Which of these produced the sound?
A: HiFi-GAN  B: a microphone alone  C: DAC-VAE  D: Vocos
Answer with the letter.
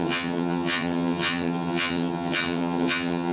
A